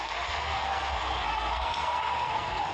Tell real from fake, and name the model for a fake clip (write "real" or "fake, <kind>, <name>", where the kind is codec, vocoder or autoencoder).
fake, codec, SNAC